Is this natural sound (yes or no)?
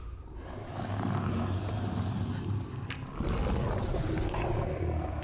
yes